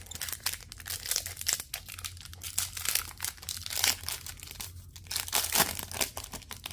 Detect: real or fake real